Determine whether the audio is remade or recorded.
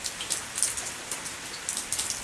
recorded